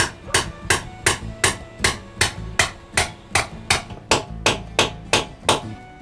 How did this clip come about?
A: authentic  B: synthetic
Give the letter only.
A